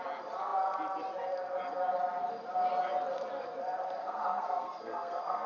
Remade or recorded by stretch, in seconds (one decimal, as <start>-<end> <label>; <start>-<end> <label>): 0.0-4.0 recorded; 4.0-5.5 remade